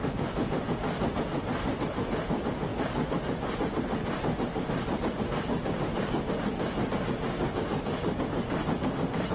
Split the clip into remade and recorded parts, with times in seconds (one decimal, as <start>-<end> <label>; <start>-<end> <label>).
0.0-9.3 recorded